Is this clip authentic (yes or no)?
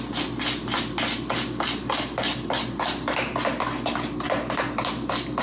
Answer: yes